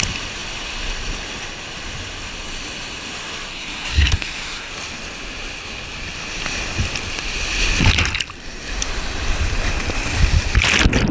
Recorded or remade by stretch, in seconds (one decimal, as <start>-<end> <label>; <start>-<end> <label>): 0.0-3.5 recorded; 3.5-4.7 remade; 4.7-11.1 recorded